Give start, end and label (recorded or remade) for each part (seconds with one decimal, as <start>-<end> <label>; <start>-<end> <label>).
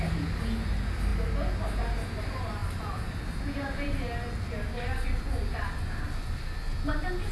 0.0-2.6 recorded; 2.6-7.3 remade